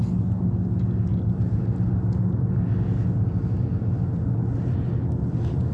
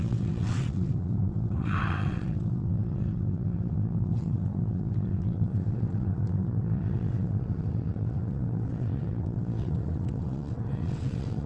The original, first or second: first